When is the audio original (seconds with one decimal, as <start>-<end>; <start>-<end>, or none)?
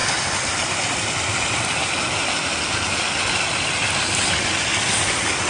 0.0-5.5